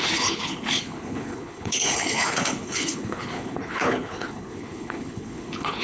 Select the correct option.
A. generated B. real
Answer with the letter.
A